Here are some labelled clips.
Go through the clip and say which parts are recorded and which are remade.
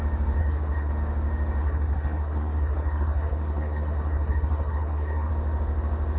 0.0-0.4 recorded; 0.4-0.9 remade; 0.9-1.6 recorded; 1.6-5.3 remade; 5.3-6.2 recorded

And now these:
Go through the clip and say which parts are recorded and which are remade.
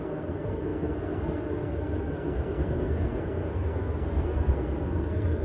0.0-5.4 remade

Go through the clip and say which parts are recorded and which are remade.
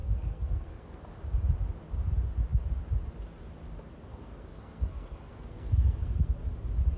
0.0-1.0 remade; 1.0-4.1 recorded; 4.1-6.3 remade; 6.3-7.0 recorded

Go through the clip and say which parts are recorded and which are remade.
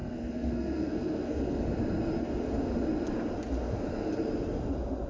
0.0-1.6 remade; 1.6-5.1 recorded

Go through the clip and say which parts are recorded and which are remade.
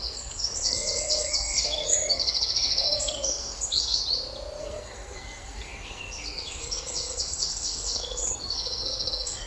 0.0-4.0 remade; 4.0-4.6 recorded; 4.6-9.5 remade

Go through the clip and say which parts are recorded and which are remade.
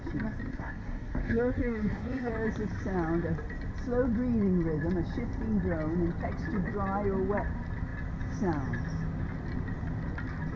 0.0-0.5 recorded; 0.5-2.3 remade; 2.3-10.6 recorded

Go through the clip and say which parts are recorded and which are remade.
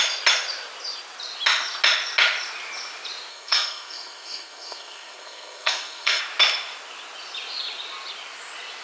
0.0-3.3 recorded; 3.3-6.2 remade; 6.2-8.8 recorded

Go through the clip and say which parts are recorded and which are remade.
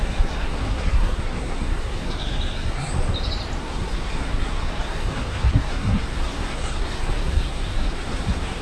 0.0-2.9 remade; 2.9-3.6 recorded; 3.6-8.6 remade